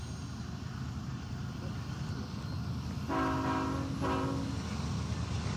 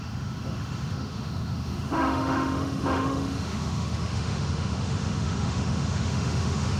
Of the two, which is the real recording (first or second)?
first